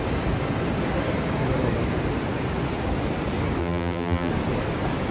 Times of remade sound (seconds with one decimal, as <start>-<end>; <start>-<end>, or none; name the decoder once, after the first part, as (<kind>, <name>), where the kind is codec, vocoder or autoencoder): 3.6-4.3 (vocoder, BigVGAN v2)